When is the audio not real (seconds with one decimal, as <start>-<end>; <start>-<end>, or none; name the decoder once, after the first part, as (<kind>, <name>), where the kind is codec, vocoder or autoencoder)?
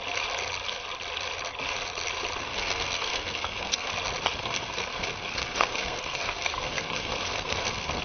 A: 2.4-3.9 (codec, SNAC); 4.4-8.0